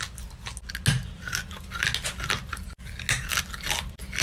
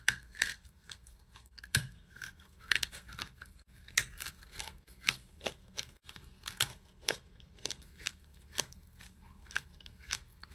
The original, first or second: first